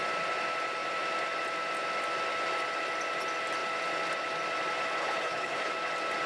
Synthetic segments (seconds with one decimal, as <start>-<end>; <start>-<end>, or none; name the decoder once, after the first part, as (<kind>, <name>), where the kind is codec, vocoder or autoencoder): 5.0-5.7 (codec, HILCodec)